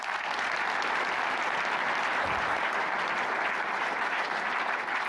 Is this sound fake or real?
real